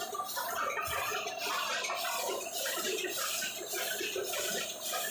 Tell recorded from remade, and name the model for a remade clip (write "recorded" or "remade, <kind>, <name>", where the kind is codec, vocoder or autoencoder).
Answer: remade, vocoder, BigVGAN v2